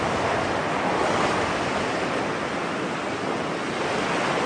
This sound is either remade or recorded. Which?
recorded